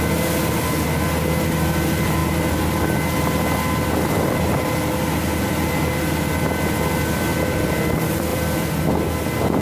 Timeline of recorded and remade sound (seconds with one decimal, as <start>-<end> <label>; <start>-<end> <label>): 0.0-8.3 recorded; 8.3-8.9 remade; 8.9-9.6 recorded

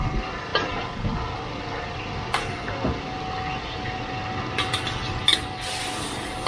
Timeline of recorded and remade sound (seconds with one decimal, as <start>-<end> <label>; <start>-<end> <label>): 0.0-6.5 recorded

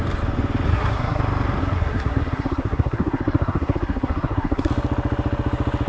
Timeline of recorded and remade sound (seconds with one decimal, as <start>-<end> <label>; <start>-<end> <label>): 0.0-0.7 recorded; 0.7-1.2 remade; 1.2-1.6 recorded; 1.6-4.7 remade; 4.7-5.9 recorded